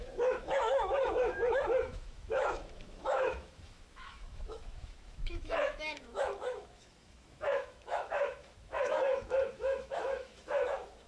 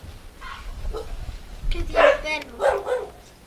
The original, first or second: second